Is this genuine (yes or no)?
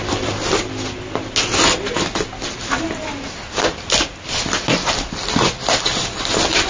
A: yes